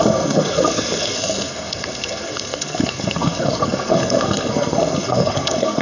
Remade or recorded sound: remade